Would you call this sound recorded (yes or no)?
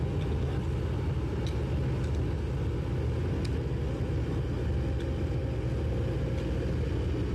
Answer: yes